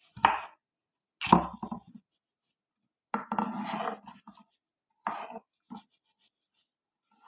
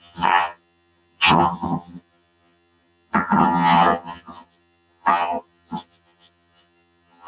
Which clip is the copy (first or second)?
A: second